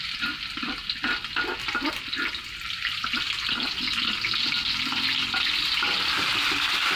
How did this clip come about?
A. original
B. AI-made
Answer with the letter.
A